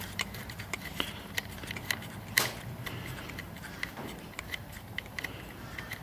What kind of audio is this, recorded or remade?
remade